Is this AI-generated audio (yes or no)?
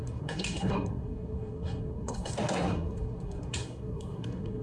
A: yes